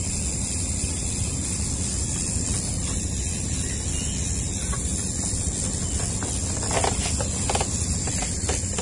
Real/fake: real